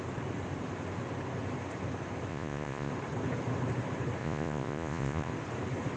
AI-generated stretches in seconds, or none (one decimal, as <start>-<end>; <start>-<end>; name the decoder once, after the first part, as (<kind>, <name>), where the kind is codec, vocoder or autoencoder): 2.3-2.9 (vocoder, Vocos); 4.2-5.3